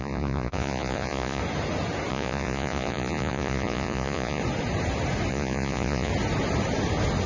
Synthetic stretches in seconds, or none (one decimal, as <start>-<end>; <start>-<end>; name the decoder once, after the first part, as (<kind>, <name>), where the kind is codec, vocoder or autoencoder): 0.0-1.4 (vocoder, Vocos); 2.1-4.4; 5.3-6.1